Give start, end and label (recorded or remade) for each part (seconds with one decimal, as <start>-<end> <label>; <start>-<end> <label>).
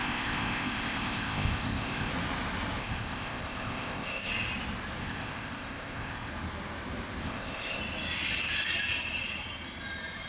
0.0-2.1 remade; 2.1-2.8 recorded; 2.8-4.3 remade; 4.3-5.0 recorded; 5.0-6.3 remade; 6.3-7.2 recorded; 7.2-7.8 remade; 7.8-10.3 recorded